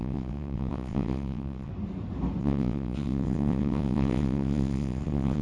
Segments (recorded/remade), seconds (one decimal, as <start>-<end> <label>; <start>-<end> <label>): 0.0-1.7 remade; 1.7-2.4 recorded; 2.4-5.4 remade